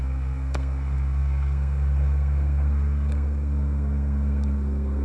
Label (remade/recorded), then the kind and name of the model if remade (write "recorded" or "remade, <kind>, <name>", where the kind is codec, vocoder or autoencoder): remade, codec, SNAC